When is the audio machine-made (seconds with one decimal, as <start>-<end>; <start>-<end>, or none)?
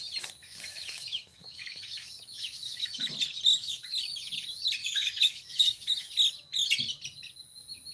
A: 0.4-3.1; 3.6-4.3; 4.8-6.1